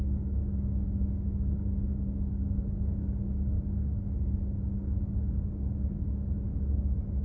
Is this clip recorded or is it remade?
remade